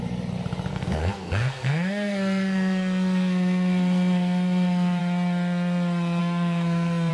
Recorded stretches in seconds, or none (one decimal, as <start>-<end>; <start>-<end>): 0.0-0.7; 5.0-6.2